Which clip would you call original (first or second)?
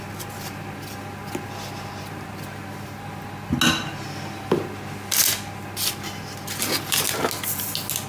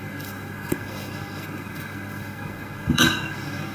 first